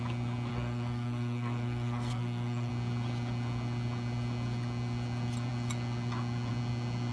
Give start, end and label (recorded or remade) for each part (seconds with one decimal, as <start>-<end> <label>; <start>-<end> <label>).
0.0-0.5 recorded; 0.5-2.7 remade; 2.7-7.1 recorded